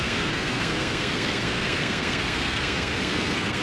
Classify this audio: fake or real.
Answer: fake